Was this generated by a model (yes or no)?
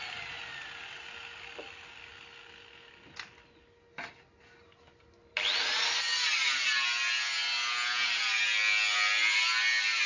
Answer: no